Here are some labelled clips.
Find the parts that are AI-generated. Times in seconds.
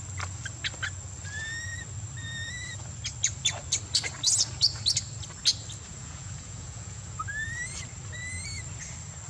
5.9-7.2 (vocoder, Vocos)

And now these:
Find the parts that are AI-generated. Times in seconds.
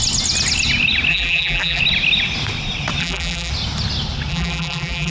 1.1-1.8 (vocoder, BigVGAN v2); 3.0-3.5; 4.3-5.1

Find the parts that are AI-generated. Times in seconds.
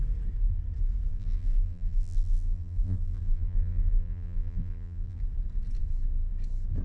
1.1-5.2 (vocoder, BigVGAN v2)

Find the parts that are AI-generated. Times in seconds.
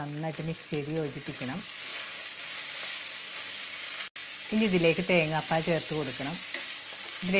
1.9-2.5 (vocoder, Vocos)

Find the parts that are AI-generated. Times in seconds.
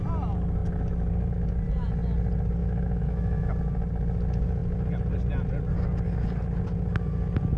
2.6-3.5 (autoencoder, DAC-VAE)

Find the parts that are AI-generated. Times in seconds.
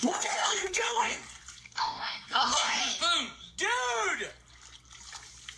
0.0-1.1 (codec, SNAC); 1.6-2.8